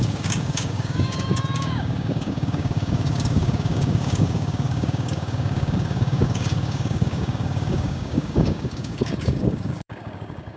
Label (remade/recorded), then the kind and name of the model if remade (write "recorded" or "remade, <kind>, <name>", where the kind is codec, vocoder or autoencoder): remade, codec, DAC